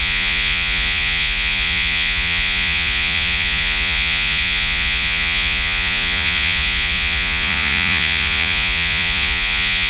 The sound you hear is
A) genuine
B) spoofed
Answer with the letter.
B